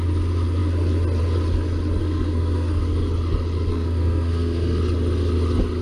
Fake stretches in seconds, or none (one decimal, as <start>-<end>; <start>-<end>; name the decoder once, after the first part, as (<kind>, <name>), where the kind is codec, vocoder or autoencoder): 2.0-2.8 (codec, SNAC); 3.7-4.8